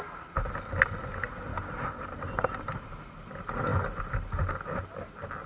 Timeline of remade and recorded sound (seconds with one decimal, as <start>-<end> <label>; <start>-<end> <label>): 0.0-1.5 recorded; 1.5-3.0 remade; 3.0-5.5 recorded